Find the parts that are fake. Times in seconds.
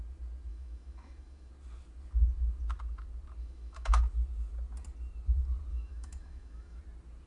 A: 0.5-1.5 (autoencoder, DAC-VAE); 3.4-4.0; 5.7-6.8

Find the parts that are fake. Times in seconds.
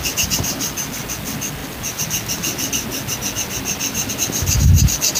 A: none